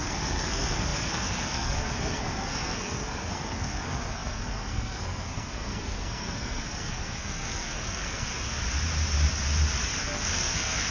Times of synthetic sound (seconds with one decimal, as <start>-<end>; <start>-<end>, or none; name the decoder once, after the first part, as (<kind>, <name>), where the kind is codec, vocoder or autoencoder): 0.0-8.3 (codec, SNAC); 10.0-10.9